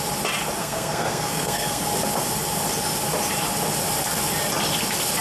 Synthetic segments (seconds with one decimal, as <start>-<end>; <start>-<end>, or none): 0.6-1.8